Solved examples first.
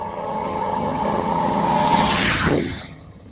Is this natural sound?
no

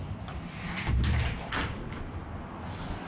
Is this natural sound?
yes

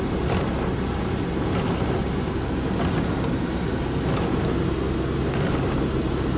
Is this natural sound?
yes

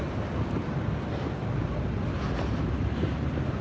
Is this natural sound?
yes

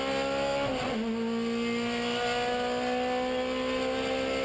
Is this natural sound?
yes